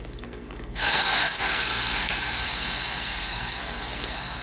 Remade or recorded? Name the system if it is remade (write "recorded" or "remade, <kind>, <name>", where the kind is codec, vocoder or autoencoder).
remade, codec, SNAC